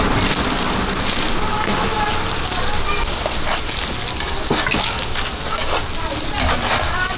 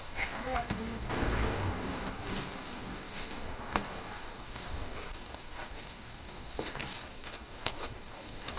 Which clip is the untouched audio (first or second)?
first